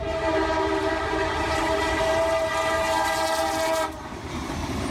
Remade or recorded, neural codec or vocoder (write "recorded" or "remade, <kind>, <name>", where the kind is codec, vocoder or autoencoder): remade, vocoder, BigVGAN v2